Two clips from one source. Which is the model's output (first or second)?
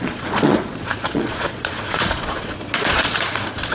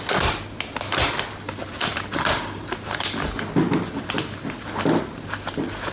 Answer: first